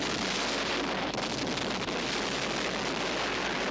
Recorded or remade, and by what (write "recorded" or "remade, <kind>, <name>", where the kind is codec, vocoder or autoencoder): recorded